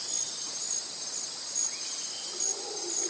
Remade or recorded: recorded